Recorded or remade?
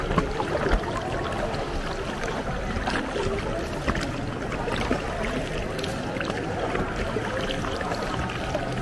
recorded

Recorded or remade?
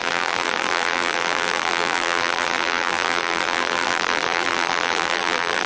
remade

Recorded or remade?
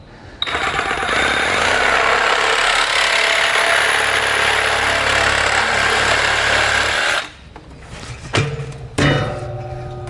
recorded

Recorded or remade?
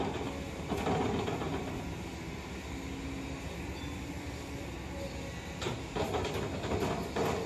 recorded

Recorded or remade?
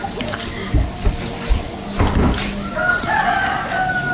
recorded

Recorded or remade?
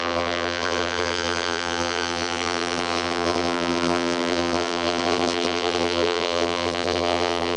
remade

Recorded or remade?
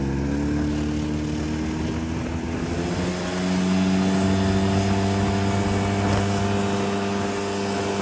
recorded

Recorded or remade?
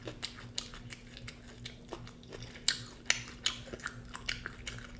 recorded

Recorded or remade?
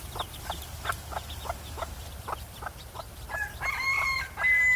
recorded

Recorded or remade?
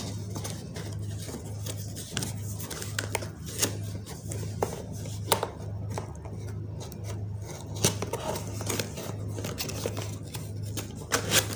recorded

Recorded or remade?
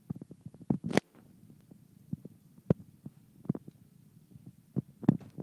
recorded